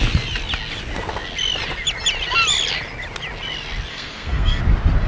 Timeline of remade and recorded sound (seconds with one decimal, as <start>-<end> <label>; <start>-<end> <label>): 0.0-3.9 recorded; 3.9-4.6 remade; 4.6-5.1 recorded